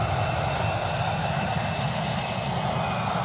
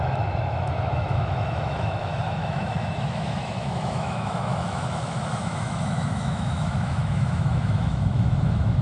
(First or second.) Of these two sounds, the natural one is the first